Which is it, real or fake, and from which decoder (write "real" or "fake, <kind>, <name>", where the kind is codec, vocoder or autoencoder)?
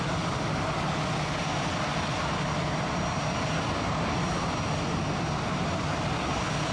real